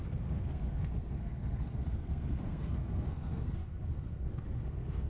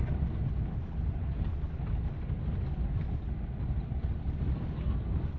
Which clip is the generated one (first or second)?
first